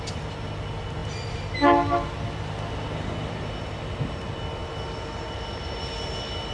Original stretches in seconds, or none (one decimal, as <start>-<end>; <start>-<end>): 0.0-6.5